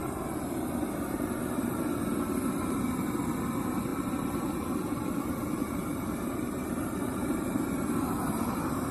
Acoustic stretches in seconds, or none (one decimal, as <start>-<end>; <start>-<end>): 0.7-3.9; 7.9-8.9